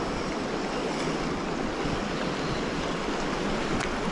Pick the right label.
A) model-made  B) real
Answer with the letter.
B